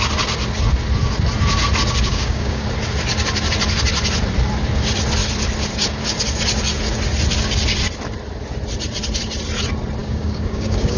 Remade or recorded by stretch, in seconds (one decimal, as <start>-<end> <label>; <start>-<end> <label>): 0.0-2.1 recorded; 2.1-2.6 remade; 2.6-10.0 recorded; 10.0-11.0 remade

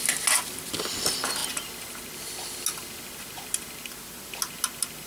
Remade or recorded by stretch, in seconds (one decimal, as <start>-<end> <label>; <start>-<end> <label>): 0.0-5.1 recorded

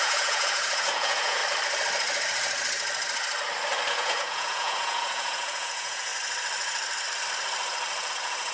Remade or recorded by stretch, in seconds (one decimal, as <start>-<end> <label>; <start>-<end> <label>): 0.0-1.4 remade; 1.4-3.9 recorded; 3.9-6.1 remade; 6.1-8.1 recorded; 8.1-8.5 remade

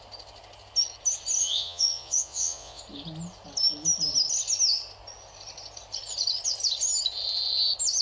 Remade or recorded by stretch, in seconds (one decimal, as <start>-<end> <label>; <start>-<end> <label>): 0.0-1.4 recorded; 1.4-2.8 remade; 2.8-8.0 recorded

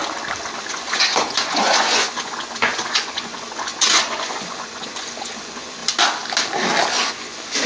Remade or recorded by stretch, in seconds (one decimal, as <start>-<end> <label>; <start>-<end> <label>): 0.0-0.7 recorded; 0.7-5.8 remade; 5.8-6.9 recorded; 6.9-7.7 remade

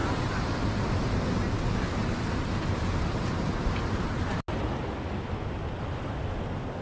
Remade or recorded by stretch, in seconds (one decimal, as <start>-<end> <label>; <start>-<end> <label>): 0.0-6.8 recorded

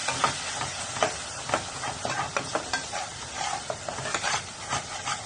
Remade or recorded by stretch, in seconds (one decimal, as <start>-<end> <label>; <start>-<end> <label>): 0.0-2.5 recorded; 2.5-3.3 remade; 3.3-5.3 recorded